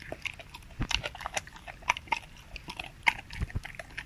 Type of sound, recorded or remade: recorded